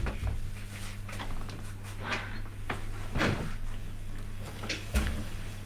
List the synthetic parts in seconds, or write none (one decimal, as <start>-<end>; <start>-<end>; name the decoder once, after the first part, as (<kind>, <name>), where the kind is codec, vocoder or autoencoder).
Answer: 3.8-5.7 (codec, DAC)